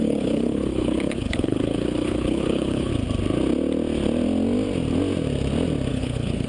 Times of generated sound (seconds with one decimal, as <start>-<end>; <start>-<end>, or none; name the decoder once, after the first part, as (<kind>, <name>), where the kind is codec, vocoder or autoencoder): 0.0-2.9 (codec, HILCodec); 5.9-6.5